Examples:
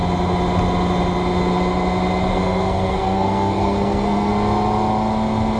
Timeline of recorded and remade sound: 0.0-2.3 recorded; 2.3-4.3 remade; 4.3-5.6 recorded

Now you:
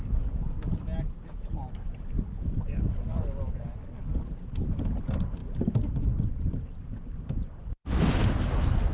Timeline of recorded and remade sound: 0.0-8.9 recorded

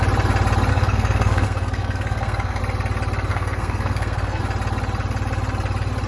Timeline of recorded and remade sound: 0.0-0.7 recorded; 0.7-2.6 remade; 2.6-3.3 recorded; 3.3-4.4 remade; 4.4-6.1 recorded

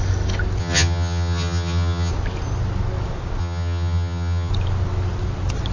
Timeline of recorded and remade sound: 0.0-0.6 recorded; 0.6-2.1 remade; 2.1-3.4 recorded; 3.4-4.5 remade; 4.5-5.7 recorded

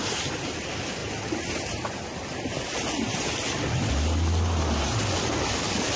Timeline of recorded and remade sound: 0.0-6.0 recorded

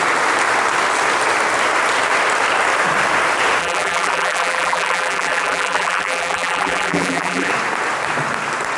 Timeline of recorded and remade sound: 0.0-3.6 recorded; 3.6-7.5 remade; 7.5-8.8 recorded